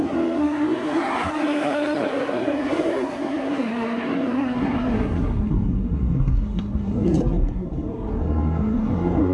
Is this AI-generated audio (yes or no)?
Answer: yes